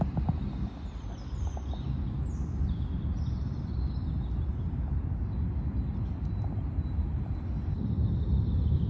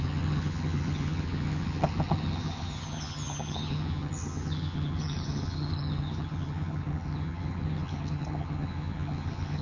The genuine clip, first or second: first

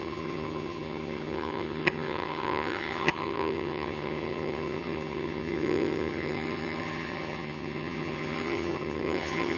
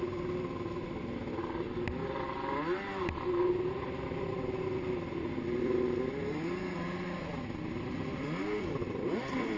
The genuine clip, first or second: second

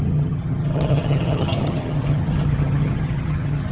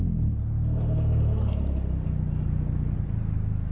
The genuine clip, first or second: second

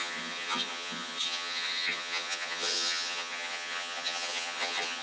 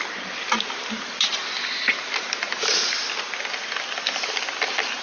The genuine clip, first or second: second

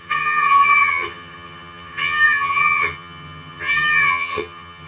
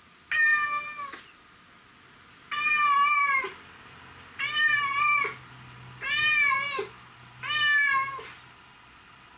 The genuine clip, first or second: second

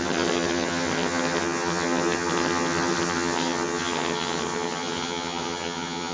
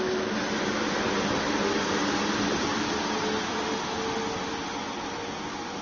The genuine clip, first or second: second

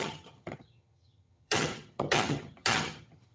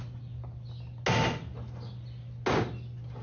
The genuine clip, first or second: second